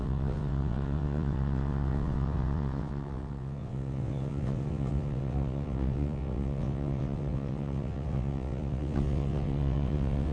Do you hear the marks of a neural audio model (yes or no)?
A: yes